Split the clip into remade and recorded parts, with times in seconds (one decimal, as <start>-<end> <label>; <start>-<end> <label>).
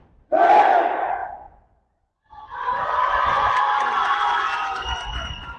0.0-1.2 recorded; 1.2-3.5 remade; 3.5-4.0 recorded; 4.0-5.6 remade